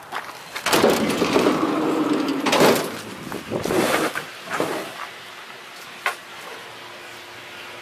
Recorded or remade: recorded